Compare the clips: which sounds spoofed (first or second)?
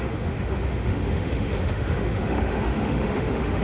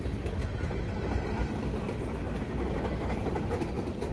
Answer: first